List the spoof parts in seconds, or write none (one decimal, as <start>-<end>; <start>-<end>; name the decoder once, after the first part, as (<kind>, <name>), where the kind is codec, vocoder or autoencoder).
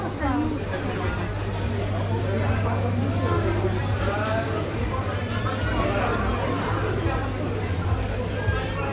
3.8-5.3 (vocoder, BigVGAN v2)